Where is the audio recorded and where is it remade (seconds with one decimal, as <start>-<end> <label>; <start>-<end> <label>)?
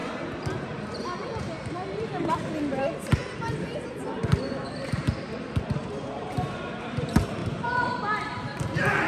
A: 0.0-7.4 recorded; 7.4-8.4 remade; 8.4-9.1 recorded